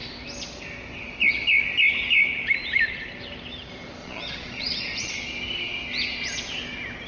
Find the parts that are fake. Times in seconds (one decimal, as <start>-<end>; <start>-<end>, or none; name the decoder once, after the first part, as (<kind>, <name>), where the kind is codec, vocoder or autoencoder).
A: 4.0-5.1 (vocoder, Vocos)